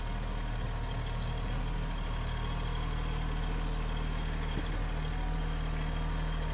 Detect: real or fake real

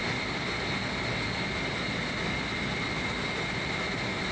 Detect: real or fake real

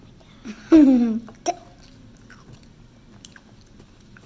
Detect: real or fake real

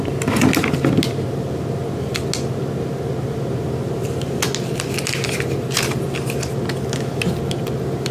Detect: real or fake real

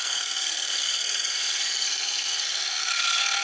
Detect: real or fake fake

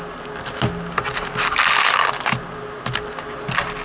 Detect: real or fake real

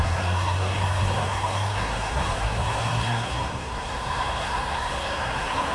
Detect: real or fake fake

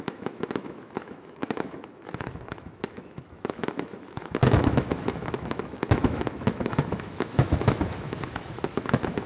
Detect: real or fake fake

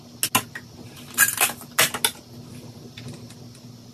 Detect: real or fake real